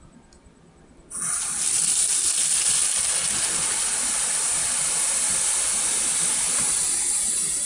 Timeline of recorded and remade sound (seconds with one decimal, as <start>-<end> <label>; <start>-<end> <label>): 0.0-2.8 remade; 2.8-7.7 recorded